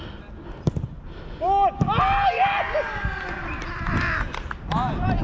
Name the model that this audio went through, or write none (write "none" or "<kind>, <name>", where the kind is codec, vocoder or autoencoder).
none